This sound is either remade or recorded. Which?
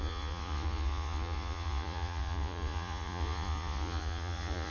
remade